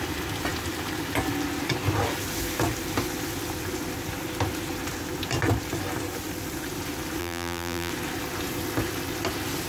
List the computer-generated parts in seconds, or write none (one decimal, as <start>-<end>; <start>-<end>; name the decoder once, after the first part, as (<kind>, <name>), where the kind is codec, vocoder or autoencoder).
7.2-7.9 (vocoder, BigVGAN v2)